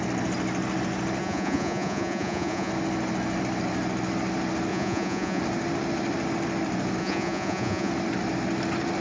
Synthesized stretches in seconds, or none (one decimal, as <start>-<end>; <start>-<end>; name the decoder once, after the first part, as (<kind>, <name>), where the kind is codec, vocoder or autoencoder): 1.2-2.7 (vocoder, Vocos); 4.7-5.4; 7.0-7.9